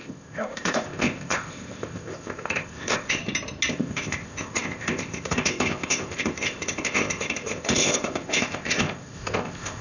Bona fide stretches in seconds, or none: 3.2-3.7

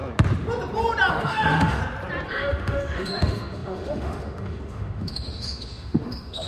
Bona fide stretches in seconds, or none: 0.0-1.1; 1.8-2.3

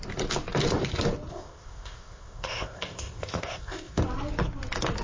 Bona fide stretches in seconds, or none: 0.0-1.3; 4.0-5.0

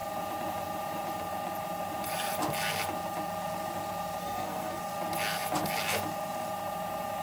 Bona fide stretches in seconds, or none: 0.0-4.2; 4.8-7.2

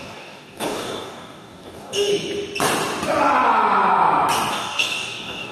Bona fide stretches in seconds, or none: 2.1-4.5

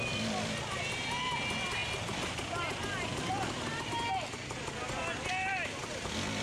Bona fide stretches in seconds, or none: 0.0-6.4